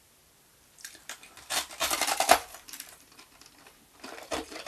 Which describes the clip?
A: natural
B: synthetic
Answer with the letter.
B